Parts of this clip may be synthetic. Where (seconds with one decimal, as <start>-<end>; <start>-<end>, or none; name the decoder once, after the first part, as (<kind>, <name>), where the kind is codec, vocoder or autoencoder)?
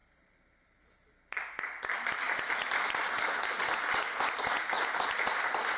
none